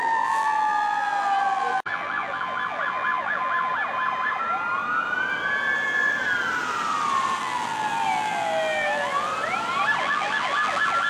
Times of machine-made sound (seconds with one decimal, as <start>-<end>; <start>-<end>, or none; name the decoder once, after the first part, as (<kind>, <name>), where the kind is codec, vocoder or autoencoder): 0.0-3.7 (vocoder, BigVGAN v2); 7.4-9.3; 10.0-11.1